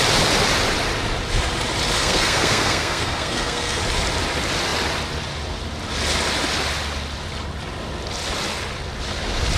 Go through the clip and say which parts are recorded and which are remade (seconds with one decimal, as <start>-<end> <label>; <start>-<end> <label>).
0.0-2.0 recorded; 2.0-3.8 remade; 3.8-9.6 recorded